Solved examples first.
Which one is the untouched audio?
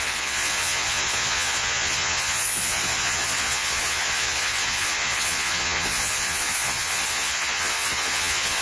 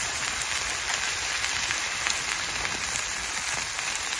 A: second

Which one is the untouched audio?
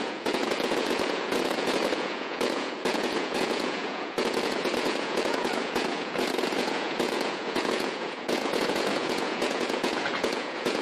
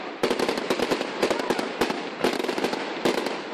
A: second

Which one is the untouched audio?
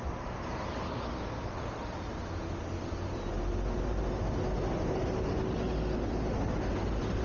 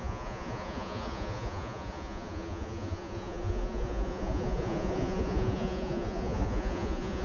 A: first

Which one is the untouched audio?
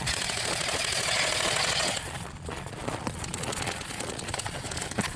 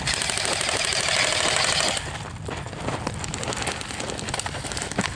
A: second